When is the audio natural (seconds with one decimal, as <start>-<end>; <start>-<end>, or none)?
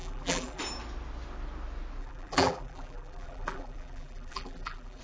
0.6-2.0